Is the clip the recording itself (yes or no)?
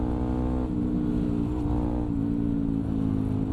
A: yes